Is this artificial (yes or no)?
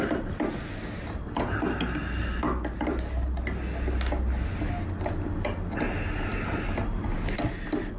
no